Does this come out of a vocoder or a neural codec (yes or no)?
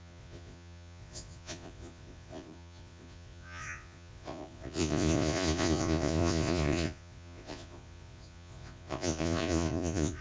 yes